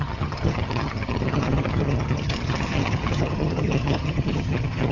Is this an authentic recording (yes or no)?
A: no